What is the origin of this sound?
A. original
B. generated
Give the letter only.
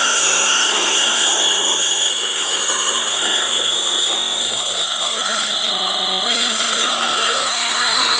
B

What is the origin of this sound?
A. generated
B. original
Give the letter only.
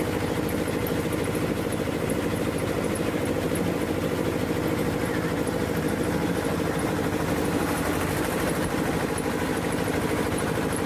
B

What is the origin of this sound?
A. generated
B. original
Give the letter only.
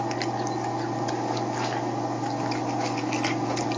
B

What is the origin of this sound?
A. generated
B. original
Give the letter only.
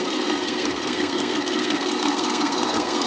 A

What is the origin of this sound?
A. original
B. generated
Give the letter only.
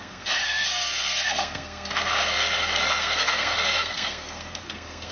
B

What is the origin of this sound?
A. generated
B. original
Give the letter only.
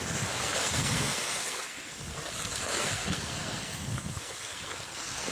A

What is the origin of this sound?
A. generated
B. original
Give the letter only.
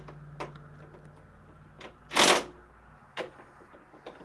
B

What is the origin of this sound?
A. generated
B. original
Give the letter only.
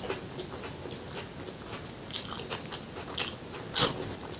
B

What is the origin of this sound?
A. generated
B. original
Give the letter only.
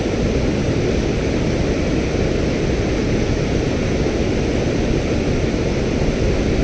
B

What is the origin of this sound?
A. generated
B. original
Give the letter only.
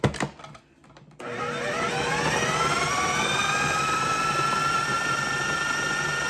B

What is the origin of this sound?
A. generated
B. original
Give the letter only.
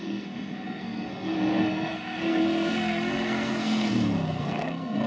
A